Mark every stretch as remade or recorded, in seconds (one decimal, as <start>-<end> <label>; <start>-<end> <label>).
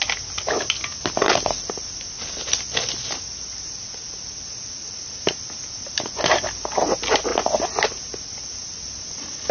0.0-9.5 recorded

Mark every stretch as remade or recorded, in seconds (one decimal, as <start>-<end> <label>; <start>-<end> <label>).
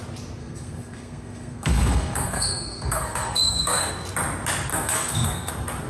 0.0-0.4 recorded; 0.4-3.9 remade; 3.9-4.7 recorded; 4.7-5.5 remade; 5.5-5.9 recorded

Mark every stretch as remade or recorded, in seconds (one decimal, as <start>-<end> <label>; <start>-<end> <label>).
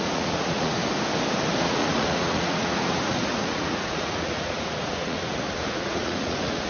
0.0-0.8 remade; 0.8-1.6 recorded; 1.6-6.7 remade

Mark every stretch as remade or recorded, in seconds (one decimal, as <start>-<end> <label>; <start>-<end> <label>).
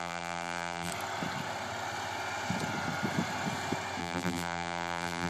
0.0-0.9 remade; 0.9-4.0 recorded; 4.0-5.3 remade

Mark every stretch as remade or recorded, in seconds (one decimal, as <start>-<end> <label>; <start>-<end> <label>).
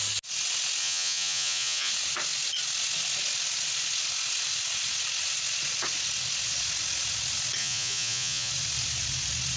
0.0-0.8 recorded; 0.8-1.9 remade; 1.9-7.6 recorded; 7.6-8.5 remade; 8.5-9.6 recorded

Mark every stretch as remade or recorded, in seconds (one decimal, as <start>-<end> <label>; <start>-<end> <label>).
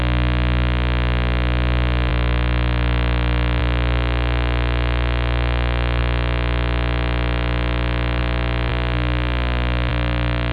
0.0-10.5 recorded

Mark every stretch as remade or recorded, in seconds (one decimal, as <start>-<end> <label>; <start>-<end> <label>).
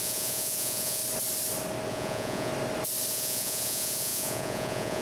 0.0-1.0 remade; 1.0-1.9 recorded; 1.9-2.5 remade; 2.5-3.1 recorded; 3.1-5.0 remade